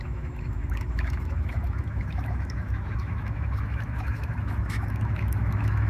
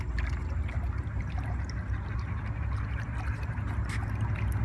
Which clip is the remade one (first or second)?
first